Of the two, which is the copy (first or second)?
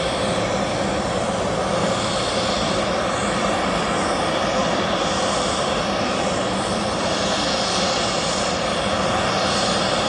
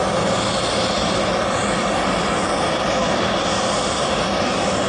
first